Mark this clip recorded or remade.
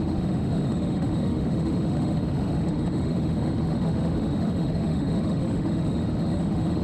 remade